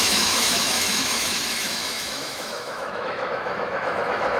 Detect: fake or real fake